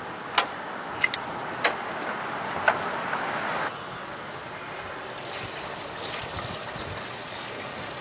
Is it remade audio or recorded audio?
recorded